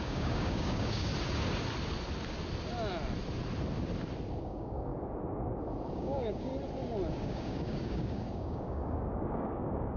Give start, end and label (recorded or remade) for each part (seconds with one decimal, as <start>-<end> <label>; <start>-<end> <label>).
0.0-1.1 remade; 1.1-4.4 recorded; 4.4-4.9 remade; 4.9-5.9 recorded; 5.9-6.5 remade; 6.5-7.1 recorded; 7.1-10.0 remade